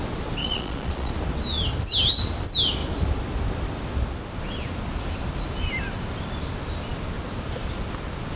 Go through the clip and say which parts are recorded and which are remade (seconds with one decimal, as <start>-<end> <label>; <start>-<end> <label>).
0.0-0.4 recorded; 0.4-1.1 remade; 1.1-8.4 recorded